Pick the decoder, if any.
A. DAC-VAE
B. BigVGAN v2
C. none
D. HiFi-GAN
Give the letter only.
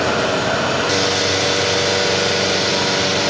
C